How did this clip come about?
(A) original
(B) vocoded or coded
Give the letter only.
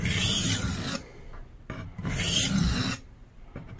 A